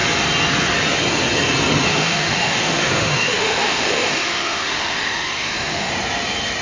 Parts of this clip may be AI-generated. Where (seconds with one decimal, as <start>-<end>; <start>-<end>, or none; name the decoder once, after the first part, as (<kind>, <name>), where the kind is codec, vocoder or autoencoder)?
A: 1.9-5.9 (autoencoder, DAC-VAE)